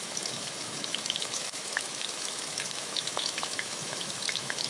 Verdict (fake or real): fake